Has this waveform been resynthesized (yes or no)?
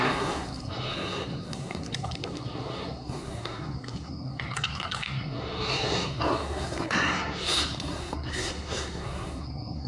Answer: yes